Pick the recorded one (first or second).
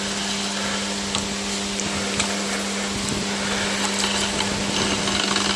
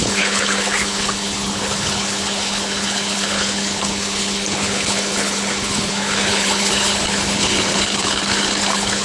first